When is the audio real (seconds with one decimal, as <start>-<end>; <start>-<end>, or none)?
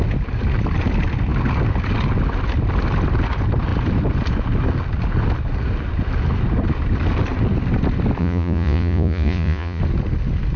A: 0.0-8.2; 9.8-10.6